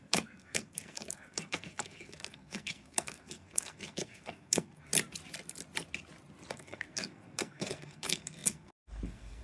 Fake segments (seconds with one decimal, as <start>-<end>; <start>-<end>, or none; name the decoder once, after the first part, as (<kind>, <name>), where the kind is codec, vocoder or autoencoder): 0.0-4.9 (codec, SNAC); 6.5-9.4